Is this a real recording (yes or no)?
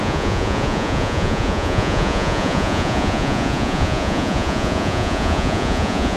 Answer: no